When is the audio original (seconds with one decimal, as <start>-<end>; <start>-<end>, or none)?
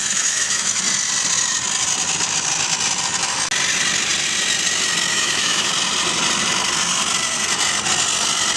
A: 0.8-5.1; 5.7-8.6